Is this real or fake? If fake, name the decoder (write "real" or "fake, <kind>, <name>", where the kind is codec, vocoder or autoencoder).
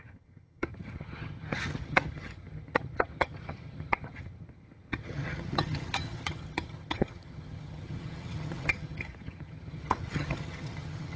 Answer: fake, vocoder, HiFi-GAN